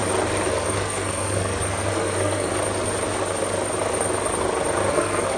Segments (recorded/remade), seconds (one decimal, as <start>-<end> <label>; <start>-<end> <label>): 0.0-0.5 recorded; 0.5-2.5 remade; 2.5-4.9 recorded; 4.9-5.4 remade